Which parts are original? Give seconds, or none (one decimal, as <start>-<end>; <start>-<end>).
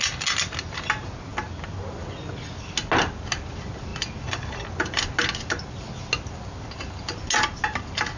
0.0-8.2